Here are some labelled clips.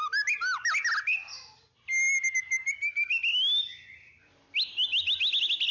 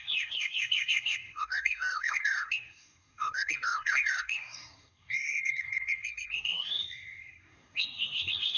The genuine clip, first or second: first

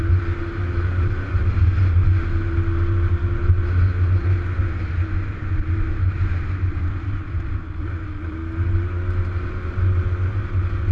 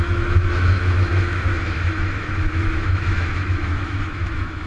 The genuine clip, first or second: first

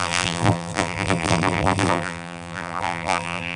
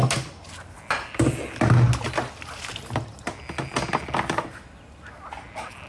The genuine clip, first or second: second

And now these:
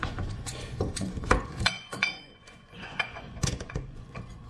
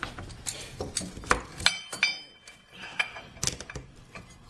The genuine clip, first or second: second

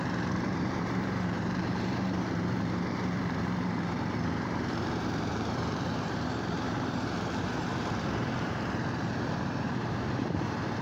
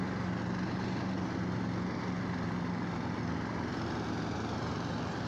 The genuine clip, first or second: second